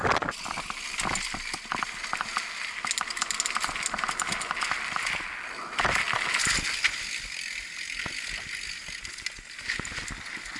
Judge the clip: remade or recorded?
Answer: recorded